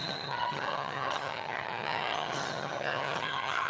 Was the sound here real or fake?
fake